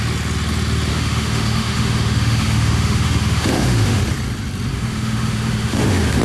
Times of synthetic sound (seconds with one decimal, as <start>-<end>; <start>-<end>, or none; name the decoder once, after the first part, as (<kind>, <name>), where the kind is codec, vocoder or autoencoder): 0.9-4.0 (autoencoder, DAC-VAE); 4.7-6.2